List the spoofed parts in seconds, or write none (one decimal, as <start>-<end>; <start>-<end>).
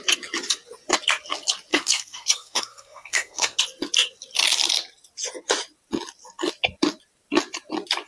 1.7-3.6